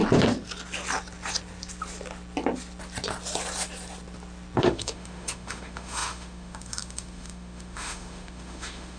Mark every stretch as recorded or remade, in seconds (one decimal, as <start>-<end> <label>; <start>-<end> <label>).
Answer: 0.0-4.6 recorded; 4.6-9.0 remade